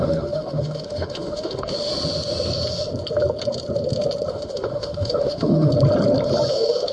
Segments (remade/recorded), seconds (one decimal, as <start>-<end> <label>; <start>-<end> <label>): 0.0-1.9 remade; 1.9-4.3 recorded; 4.3-5.7 remade; 5.7-6.5 recorded; 6.5-6.9 remade